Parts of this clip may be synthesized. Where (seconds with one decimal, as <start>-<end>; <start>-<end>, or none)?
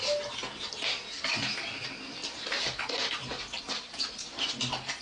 none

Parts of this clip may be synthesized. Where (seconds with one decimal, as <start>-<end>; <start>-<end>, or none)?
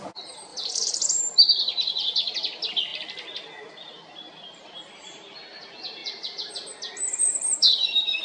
0.5-1.2; 6.0-6.5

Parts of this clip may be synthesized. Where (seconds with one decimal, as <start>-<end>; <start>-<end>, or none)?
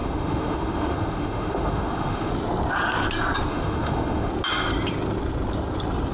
0.0-2.3; 3.5-4.3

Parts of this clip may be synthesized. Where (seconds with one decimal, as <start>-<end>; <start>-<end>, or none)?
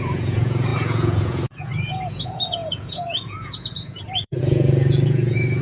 0.0-5.6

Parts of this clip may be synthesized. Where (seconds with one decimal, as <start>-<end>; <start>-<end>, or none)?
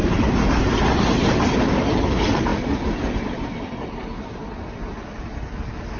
none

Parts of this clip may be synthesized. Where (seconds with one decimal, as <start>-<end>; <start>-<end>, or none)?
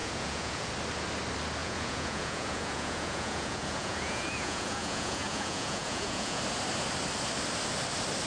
0.0-0.7; 1.6-6.4